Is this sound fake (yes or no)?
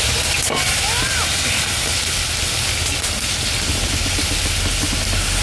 no